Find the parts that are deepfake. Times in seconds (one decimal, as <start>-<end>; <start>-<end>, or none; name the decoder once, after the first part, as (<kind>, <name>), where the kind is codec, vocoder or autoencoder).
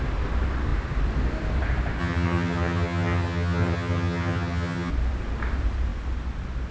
2.0-4.9 (vocoder, HiFi-GAN)